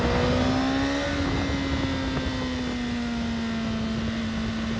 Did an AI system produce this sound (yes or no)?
no